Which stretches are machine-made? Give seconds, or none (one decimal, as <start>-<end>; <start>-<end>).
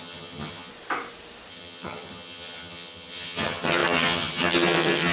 0.0-0.7; 1.5-5.1